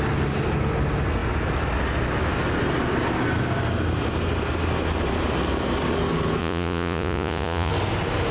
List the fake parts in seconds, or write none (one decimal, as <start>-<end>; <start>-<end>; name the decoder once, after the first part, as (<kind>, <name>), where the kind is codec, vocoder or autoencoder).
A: 6.4-7.7 (vocoder, Vocos)